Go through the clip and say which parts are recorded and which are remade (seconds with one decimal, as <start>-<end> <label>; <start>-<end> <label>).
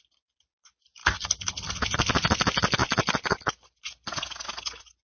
0.0-5.0 recorded